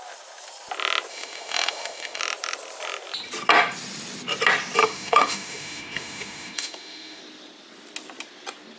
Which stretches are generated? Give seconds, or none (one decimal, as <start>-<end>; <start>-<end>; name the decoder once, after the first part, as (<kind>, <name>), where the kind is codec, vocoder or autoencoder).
1.1-2.2 (autoencoder, DAC-VAE); 4.8-7.2